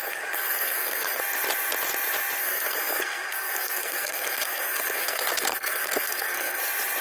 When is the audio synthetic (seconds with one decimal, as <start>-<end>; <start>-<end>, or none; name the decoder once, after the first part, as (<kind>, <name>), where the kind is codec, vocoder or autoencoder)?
0.0-1.2 (codec, SNAC); 2.4-6.6